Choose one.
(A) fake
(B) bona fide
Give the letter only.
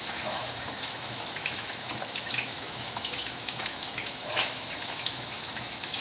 A